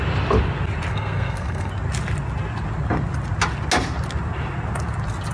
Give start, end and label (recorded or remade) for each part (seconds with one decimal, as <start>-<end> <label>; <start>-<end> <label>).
0.0-0.9 recorded; 0.9-1.7 remade; 1.7-5.3 recorded